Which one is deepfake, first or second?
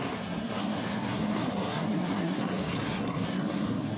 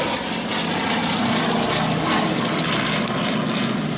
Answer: first